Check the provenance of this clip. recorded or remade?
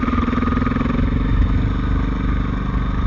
recorded